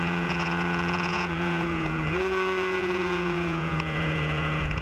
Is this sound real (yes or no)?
no